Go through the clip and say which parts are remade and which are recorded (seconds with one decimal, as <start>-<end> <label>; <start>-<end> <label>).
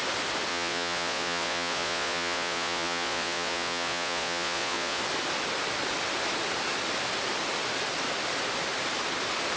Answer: 0.0-0.5 recorded; 0.5-5.0 remade; 5.0-9.6 recorded